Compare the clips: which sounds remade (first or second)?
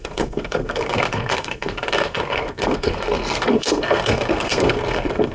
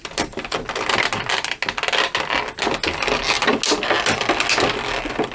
first